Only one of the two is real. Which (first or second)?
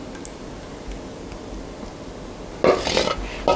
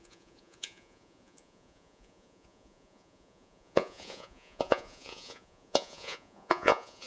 first